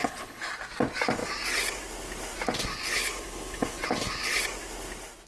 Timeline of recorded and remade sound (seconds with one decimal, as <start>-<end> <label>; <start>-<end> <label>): 0.0-0.5 remade; 0.5-2.7 recorded; 2.7-4.4 remade; 4.4-5.3 recorded